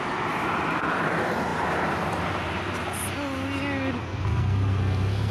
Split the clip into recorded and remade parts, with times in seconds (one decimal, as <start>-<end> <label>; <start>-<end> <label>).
0.0-4.0 recorded; 4.0-5.3 remade